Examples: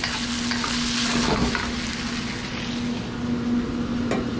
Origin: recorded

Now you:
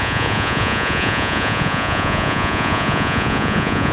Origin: remade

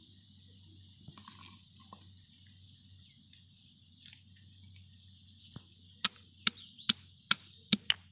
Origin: recorded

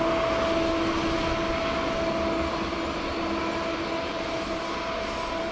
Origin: recorded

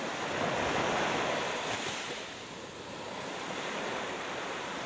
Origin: recorded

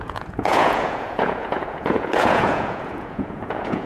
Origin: remade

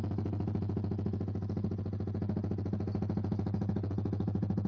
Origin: recorded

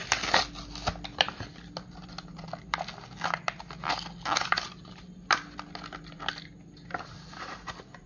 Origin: recorded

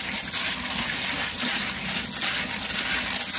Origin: recorded